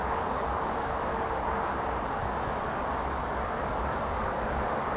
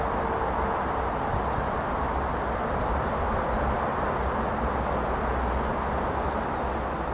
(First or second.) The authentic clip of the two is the second